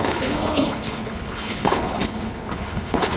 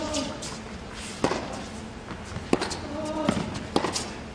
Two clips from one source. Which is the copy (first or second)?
first